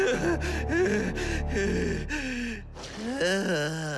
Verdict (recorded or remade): recorded